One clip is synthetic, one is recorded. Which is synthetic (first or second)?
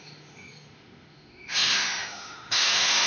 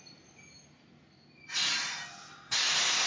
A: first